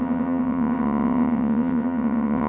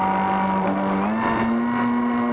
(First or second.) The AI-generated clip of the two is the first